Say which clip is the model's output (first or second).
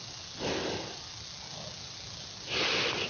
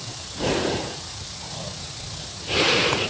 second